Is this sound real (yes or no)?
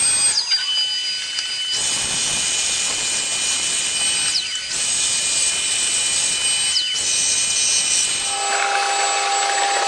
yes